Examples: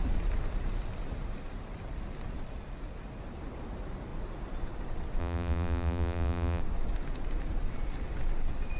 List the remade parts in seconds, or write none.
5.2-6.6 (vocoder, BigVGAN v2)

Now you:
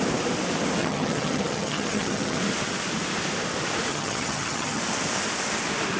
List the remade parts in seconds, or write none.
0.8-2.4 (vocoder, HiFi-GAN); 3.9-4.8

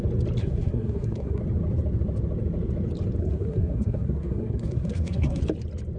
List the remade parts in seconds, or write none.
0.4-1.4 (codec, SNAC); 3.2-5.4